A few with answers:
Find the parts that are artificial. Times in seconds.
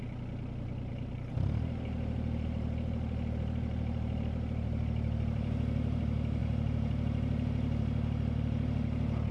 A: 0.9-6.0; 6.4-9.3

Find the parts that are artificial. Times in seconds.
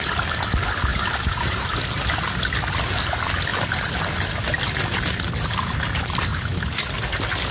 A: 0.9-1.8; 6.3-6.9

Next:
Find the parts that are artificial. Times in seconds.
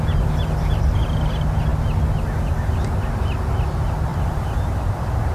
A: 4.1-4.7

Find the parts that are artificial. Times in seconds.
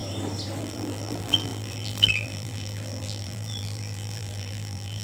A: 0.6-5.0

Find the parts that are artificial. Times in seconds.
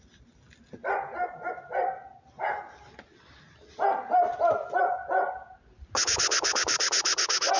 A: 0.8-1.5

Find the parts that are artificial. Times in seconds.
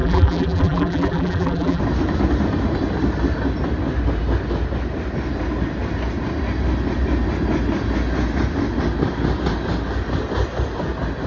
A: 0.0-1.8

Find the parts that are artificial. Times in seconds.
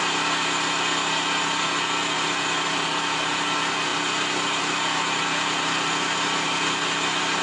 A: none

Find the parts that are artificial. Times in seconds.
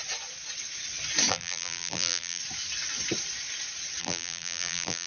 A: 1.3-2.4; 4.0-5.1